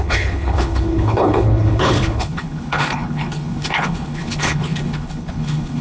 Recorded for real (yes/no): no